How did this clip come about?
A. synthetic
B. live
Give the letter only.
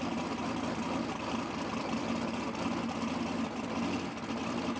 B